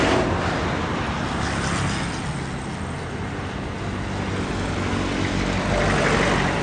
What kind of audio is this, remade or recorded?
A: recorded